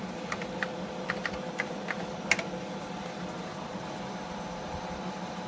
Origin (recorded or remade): recorded